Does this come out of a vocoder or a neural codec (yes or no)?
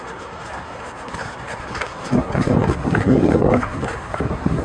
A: yes